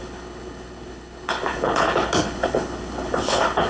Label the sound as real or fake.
fake